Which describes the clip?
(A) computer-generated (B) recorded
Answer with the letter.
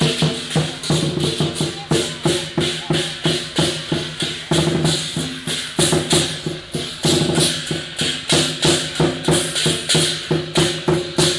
B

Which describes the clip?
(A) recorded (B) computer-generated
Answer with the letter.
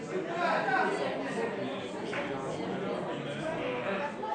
A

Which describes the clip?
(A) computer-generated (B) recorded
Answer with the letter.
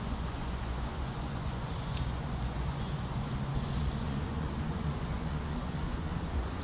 A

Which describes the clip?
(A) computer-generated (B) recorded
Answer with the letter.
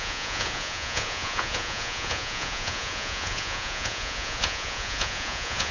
A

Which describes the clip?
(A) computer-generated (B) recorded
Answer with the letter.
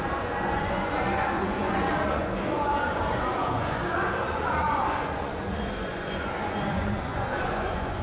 A